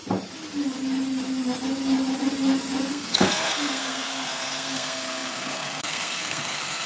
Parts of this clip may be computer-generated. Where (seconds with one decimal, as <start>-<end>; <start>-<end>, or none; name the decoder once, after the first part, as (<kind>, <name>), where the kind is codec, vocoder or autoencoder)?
2.9-6.9 (codec, SNAC)